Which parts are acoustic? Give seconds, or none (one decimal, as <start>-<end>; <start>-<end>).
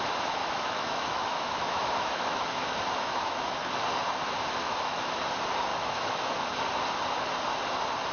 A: 0.0-0.4; 3.6-4.6; 5.2-5.7; 6.4-8.1